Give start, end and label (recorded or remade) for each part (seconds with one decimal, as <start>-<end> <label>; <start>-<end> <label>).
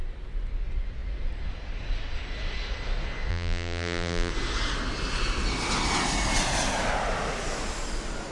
0.0-3.3 recorded; 3.3-4.3 remade; 4.3-8.3 recorded